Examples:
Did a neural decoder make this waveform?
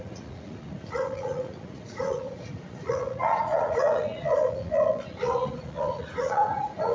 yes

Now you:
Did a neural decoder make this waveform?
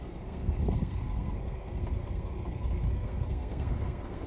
yes